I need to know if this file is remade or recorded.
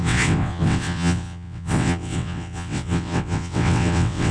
remade